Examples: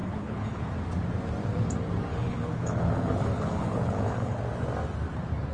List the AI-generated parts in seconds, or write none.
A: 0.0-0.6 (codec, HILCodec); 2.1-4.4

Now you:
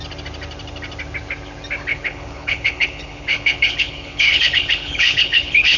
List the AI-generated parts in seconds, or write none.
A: 1.9-5.8 (codec, HILCodec)

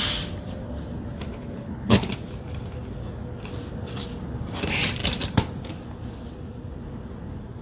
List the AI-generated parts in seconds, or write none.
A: 1.3-2.1 (codec, HILCodec)